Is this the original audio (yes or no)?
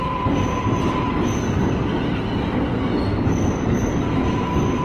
yes